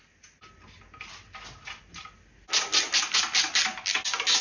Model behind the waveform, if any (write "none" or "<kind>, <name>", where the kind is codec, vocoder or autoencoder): none